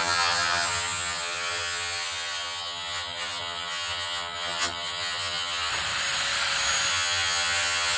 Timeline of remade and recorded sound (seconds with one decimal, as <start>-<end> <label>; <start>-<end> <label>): 0.0-5.7 remade; 5.7-6.9 recorded; 6.9-8.0 remade